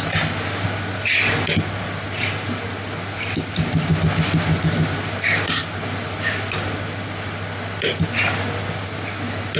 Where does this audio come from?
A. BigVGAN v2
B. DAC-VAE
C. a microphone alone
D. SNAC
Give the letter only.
C